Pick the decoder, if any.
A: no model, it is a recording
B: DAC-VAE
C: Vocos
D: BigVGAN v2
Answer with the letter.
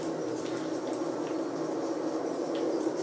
A